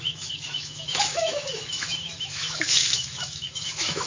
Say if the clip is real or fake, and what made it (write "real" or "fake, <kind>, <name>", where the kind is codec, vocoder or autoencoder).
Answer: fake, autoencoder, DAC-VAE